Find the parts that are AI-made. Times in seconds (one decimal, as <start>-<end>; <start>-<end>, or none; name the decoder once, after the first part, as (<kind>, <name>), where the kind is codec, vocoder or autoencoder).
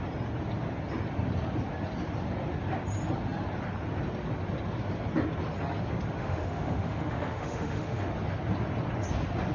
6.2-8.1 (autoencoder, DAC-VAE)